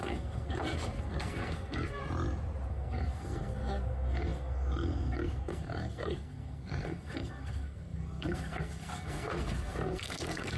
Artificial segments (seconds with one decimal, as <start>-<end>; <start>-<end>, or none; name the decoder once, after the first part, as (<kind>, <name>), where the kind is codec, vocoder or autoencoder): 0.0-2.0 (codec, SNAC); 2.7-10.6